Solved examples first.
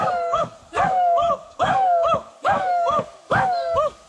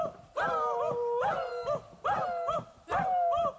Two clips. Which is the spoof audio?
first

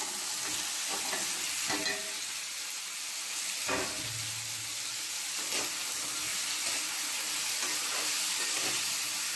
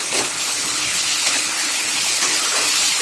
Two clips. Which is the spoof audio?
second